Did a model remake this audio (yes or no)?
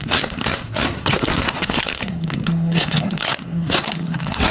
yes